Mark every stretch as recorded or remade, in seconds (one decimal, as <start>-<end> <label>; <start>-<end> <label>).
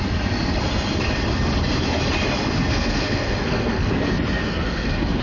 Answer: 0.0-2.7 recorded; 2.7-3.9 remade; 3.9-4.4 recorded; 4.4-5.2 remade